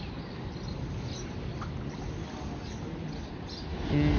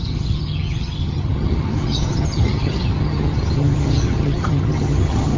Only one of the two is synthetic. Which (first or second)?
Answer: second